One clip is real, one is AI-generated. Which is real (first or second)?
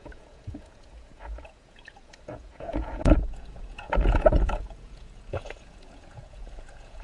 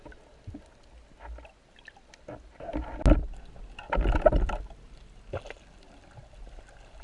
second